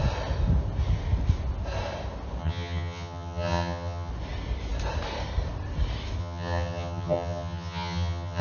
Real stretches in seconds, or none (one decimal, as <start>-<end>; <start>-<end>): 0.0-2.4; 4.1-6.2